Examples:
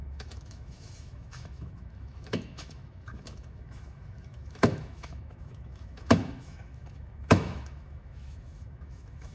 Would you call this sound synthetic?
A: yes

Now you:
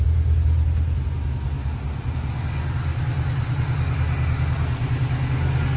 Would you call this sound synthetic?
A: no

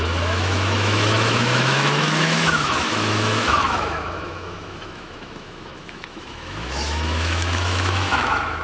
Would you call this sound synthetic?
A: yes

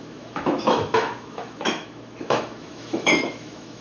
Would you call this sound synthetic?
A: yes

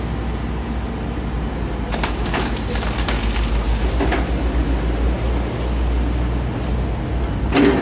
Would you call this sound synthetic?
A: no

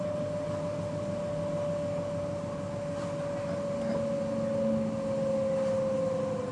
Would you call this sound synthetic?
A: no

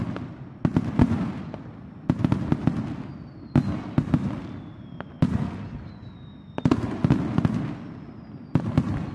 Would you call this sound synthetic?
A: no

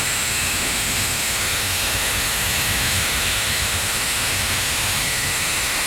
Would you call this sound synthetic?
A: yes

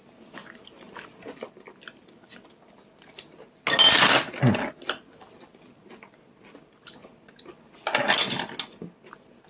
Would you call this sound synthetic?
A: no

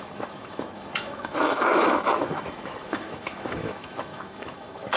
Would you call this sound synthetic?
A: yes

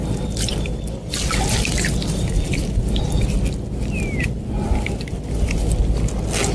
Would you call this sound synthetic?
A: no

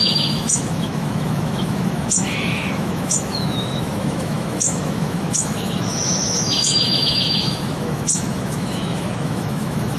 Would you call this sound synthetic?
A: yes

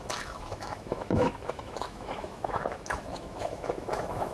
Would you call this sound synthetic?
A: yes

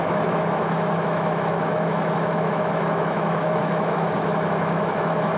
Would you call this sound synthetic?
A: yes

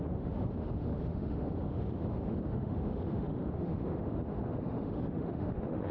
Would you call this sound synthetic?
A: yes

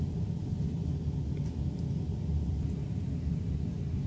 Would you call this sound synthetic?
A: no